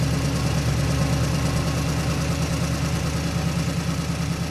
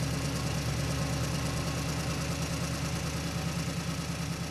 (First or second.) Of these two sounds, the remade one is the first